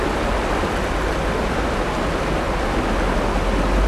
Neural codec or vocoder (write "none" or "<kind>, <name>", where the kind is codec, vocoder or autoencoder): none